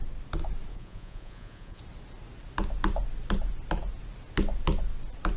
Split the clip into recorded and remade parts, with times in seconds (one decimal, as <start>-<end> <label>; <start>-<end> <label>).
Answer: 0.0-0.7 recorded; 0.7-1.8 remade; 1.8-5.4 recorded